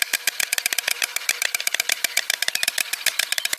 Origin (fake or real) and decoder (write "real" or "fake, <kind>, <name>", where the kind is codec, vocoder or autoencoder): fake, vocoder, BigVGAN v2